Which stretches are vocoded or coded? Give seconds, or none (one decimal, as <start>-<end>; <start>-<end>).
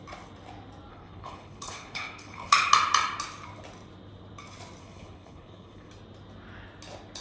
0.9-2.5; 4.8-5.9